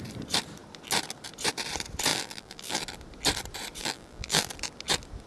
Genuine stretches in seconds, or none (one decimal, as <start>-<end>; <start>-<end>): 0.0-2.1; 2.8-3.8; 4.5-5.3

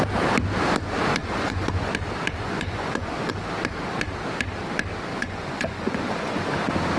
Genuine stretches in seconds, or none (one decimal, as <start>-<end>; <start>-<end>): 0.0-1.2; 1.9-2.4; 3.3-5.1; 6.3-7.0

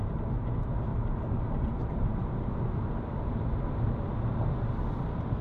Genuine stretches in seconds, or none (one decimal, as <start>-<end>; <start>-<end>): 0.0-0.9; 4.1-5.4

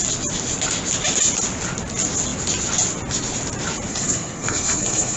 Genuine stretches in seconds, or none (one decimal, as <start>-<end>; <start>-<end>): 0.0-3.9